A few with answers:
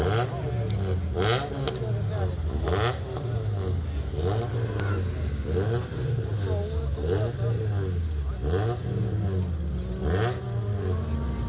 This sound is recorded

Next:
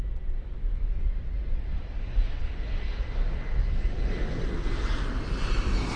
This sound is recorded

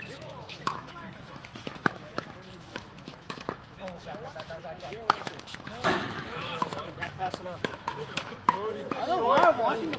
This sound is remade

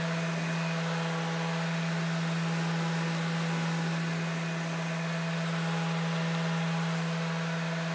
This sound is recorded